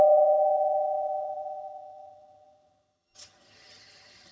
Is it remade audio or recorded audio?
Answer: remade